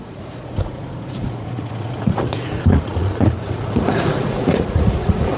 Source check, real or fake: fake